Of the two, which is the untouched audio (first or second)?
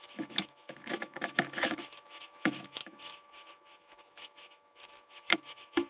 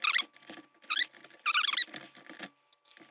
second